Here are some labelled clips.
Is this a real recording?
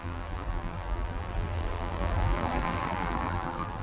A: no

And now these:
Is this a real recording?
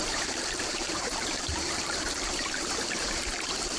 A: no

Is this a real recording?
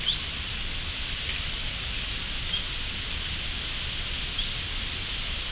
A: no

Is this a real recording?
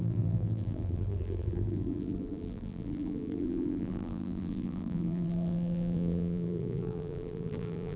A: no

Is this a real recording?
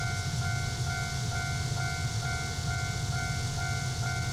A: yes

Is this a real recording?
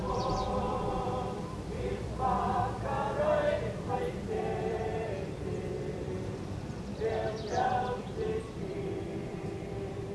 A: no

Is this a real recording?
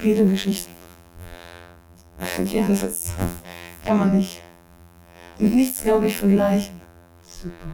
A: no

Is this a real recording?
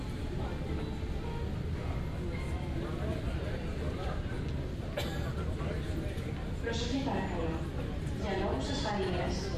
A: yes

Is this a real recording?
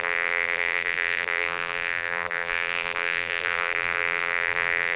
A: no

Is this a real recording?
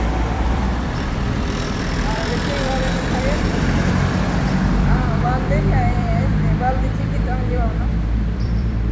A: no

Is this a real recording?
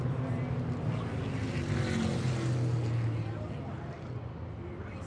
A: yes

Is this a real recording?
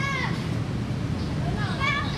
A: no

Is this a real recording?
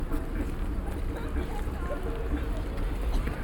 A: yes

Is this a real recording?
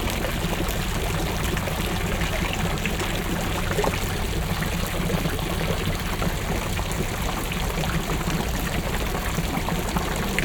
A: yes